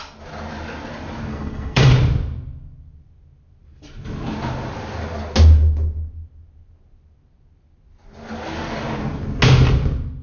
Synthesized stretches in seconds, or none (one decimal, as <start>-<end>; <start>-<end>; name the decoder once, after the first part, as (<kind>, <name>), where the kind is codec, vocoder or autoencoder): 1.3-1.9 (codec, SNAC)